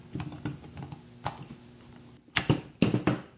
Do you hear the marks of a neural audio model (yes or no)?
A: no